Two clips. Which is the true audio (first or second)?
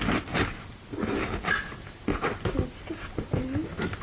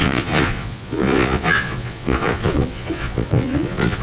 first